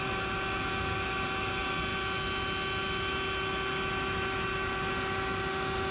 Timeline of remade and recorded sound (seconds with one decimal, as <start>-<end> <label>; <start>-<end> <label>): 0.0-5.9 recorded

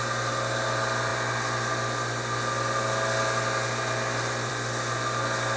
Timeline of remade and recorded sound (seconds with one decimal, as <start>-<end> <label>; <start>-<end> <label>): 0.0-5.6 recorded

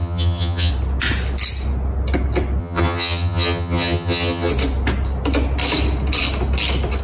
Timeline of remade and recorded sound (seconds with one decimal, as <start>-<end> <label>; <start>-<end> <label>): 0.0-0.7 remade; 0.7-2.6 recorded; 2.6-4.5 remade; 4.5-7.0 recorded

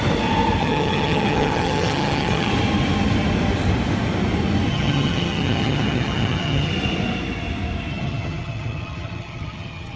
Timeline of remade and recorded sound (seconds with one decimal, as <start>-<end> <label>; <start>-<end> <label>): 0.0-0.6 recorded; 0.6-2.5 remade; 2.5-4.7 recorded; 4.7-6.7 remade; 6.7-7.9 recorded; 7.9-10.0 remade